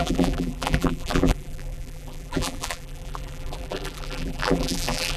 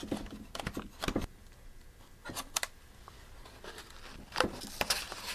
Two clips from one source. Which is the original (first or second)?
second